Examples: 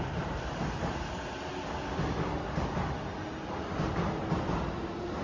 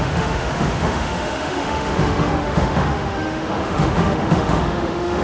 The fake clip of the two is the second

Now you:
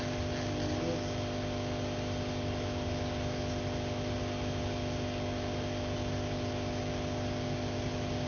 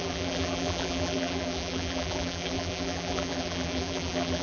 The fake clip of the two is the second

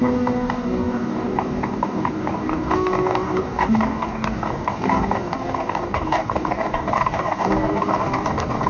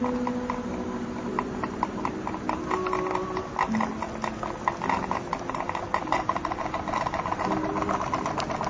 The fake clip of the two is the first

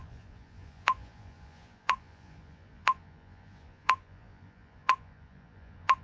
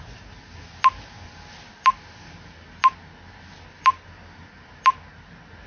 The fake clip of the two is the first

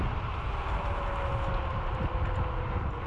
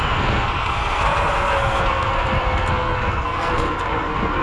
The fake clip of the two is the second